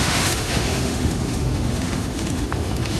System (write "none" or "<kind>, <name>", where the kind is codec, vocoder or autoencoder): autoencoder, DAC-VAE